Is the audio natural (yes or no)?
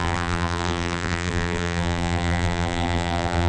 no